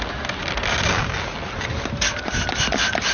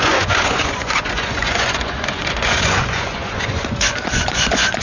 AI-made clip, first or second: second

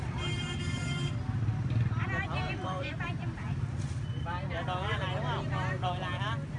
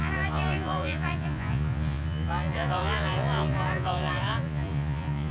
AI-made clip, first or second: second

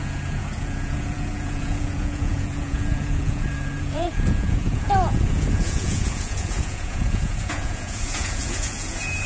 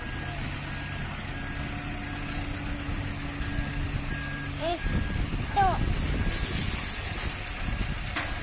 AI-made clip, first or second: first